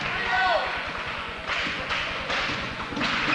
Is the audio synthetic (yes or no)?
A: yes